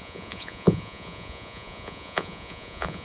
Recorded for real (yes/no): no